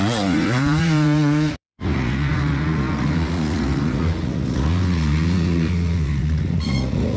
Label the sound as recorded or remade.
remade